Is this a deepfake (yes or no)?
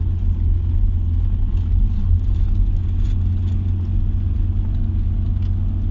no